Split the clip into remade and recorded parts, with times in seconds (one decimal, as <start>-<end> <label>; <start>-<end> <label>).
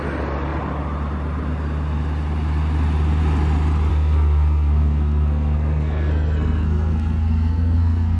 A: 0.0-3.9 recorded; 3.9-8.2 remade